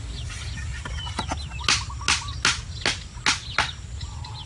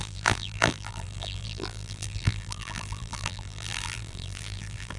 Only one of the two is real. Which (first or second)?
first